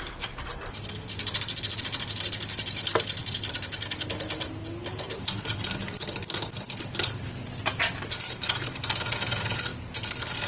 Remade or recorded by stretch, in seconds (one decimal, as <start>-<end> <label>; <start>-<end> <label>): 0.0-10.5 recorded